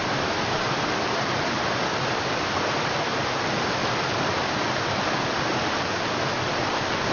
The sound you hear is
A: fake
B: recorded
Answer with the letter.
B